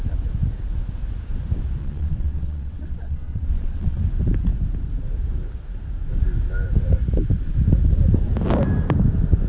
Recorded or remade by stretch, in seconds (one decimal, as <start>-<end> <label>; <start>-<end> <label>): 0.0-1.8 recorded; 1.8-4.0 remade; 4.0-9.5 recorded